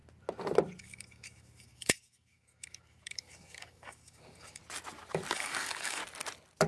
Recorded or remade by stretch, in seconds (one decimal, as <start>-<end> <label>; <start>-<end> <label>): 0.0-0.8 recorded; 0.8-4.6 remade; 4.6-5.3 recorded; 5.3-6.0 remade; 6.0-6.7 recorded